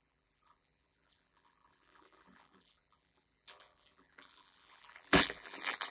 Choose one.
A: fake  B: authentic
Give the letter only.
A